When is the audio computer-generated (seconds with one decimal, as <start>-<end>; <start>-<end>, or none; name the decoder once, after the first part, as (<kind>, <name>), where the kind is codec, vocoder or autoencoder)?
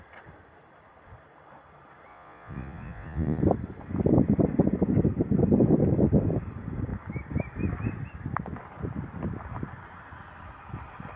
2.1-3.4 (vocoder, Vocos)